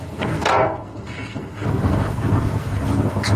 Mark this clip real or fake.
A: fake